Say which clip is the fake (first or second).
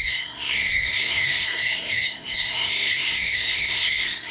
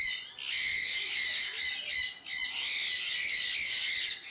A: first